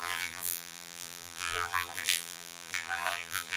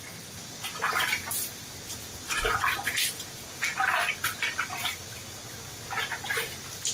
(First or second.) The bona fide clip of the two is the second